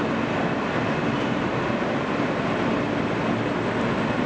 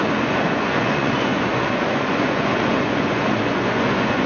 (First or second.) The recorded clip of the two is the first